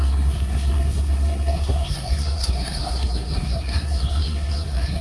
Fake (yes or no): yes